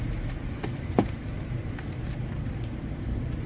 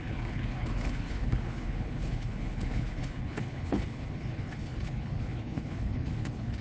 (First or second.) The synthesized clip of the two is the second